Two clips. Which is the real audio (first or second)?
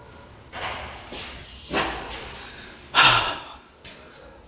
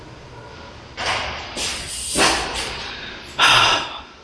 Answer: first